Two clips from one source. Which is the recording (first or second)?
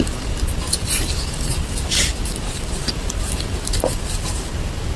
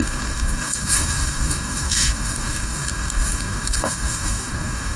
first